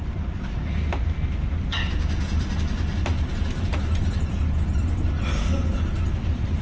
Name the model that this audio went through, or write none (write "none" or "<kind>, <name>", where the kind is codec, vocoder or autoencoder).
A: none